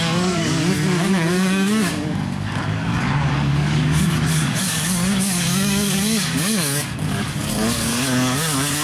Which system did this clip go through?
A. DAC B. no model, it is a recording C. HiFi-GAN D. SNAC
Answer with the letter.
A